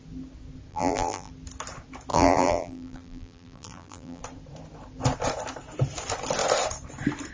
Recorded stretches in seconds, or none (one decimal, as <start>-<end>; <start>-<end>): 0.0-0.7; 1.3-2.1; 4.2-7.3